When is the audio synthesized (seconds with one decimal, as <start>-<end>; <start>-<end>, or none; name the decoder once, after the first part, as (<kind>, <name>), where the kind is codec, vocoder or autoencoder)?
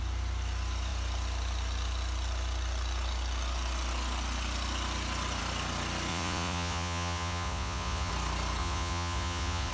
6.1-8.1 (vocoder, Vocos); 8.6-9.7